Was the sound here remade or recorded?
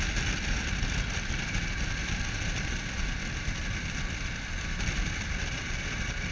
remade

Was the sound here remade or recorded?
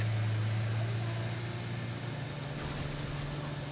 recorded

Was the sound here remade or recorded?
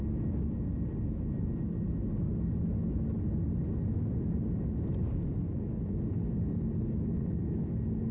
recorded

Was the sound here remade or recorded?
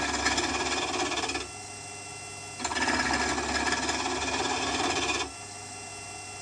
recorded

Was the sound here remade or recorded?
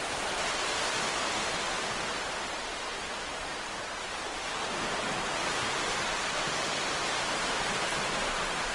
recorded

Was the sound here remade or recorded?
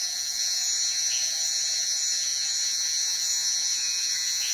remade